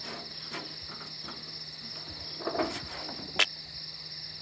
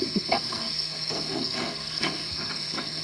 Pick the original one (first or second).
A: first